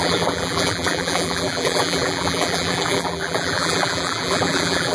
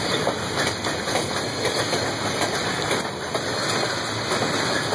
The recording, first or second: second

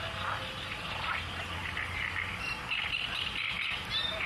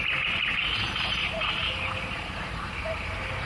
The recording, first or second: first